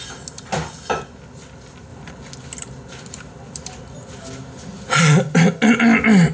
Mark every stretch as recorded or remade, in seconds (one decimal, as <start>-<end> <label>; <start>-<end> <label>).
0.0-6.3 recorded